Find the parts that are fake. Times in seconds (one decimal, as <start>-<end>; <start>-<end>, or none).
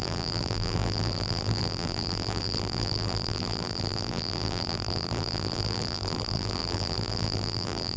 0.0-8.0